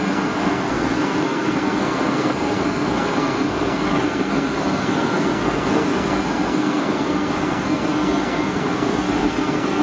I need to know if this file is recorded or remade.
remade